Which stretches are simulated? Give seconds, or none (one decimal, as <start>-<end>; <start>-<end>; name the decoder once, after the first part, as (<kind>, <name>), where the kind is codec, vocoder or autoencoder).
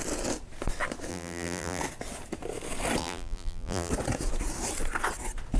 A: 1.1-1.8 (vocoder, BigVGAN v2); 3.0-3.9